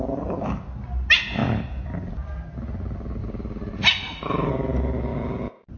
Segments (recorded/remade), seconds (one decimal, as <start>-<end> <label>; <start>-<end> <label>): 0.0-3.2 recorded; 3.2-4.5 remade; 4.5-5.8 recorded